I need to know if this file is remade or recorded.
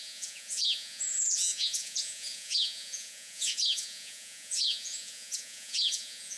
remade